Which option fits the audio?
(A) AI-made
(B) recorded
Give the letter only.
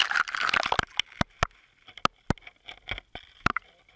B